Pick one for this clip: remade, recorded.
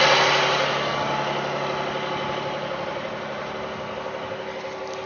recorded